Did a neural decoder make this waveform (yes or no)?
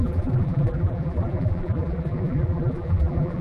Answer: yes